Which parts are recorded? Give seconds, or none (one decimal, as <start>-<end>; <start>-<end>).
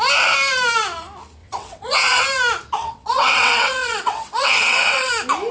0.0-1.4; 2.2-2.8; 5.1-5.5